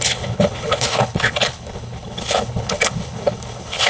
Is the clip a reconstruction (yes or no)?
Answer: yes